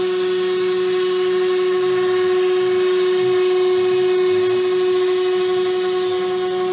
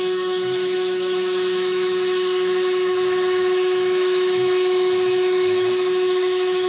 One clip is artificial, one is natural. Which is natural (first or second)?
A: first